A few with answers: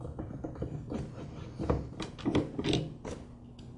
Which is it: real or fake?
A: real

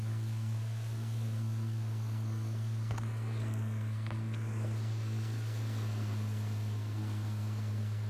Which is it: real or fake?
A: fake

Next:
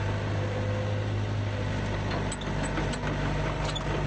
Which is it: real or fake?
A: real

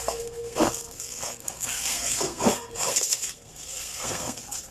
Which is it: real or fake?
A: fake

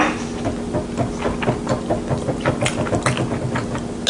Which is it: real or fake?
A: real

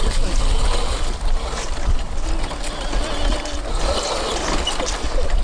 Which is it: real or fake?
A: real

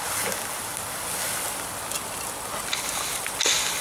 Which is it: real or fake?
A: real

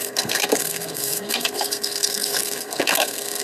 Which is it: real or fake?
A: fake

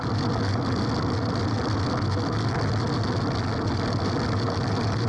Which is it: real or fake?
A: real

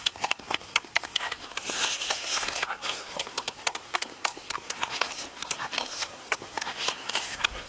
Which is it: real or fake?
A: fake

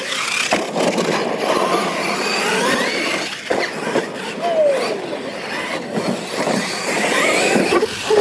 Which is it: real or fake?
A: real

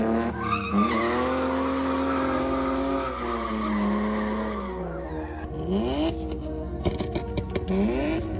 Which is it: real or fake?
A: real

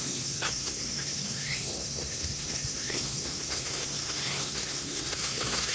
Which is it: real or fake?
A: fake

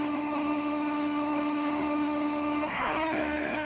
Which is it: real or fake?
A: fake